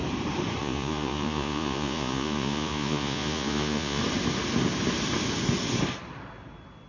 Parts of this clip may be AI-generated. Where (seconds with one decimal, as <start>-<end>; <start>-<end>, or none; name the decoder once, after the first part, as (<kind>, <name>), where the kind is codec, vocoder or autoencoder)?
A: 0.6-4.0 (vocoder, Vocos)